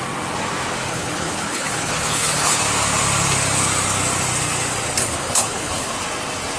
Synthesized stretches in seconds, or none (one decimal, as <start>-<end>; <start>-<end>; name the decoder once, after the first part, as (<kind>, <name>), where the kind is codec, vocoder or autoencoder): 0.9-2.6 (codec, HILCodec); 5.0-5.9